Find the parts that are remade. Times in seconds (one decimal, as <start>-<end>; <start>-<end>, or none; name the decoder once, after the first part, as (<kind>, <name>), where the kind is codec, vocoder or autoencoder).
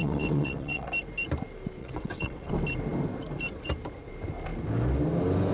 0.0-0.9 (vocoder, WaveNeXt); 1.8-2.5